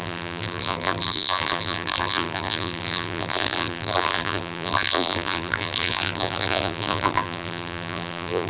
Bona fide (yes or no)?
no